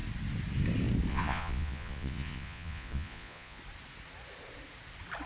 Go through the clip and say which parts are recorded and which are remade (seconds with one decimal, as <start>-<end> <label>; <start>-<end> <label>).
0.0-1.1 recorded; 1.1-3.6 remade; 3.6-5.3 recorded